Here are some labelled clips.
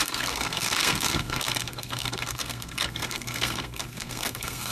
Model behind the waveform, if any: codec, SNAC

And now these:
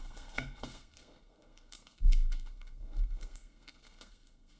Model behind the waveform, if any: codec, SNAC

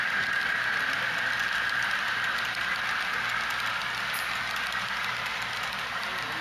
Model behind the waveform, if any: none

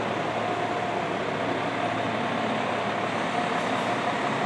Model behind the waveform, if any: none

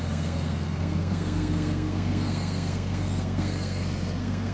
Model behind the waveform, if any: codec, SNAC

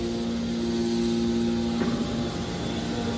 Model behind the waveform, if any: none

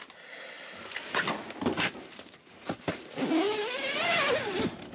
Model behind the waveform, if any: none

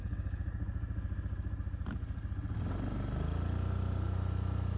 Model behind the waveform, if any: none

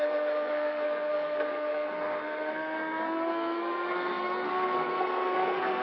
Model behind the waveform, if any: codec, SNAC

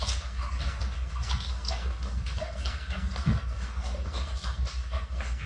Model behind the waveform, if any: codec, SNAC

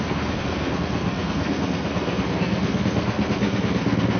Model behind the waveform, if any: codec, SNAC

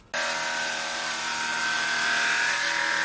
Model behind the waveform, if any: none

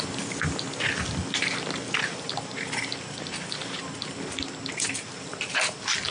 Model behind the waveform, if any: none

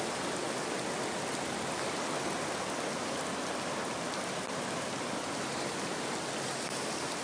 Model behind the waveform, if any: none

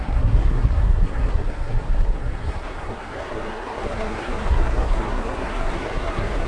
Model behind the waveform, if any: codec, SNAC